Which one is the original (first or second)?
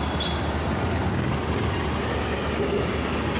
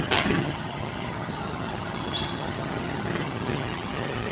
first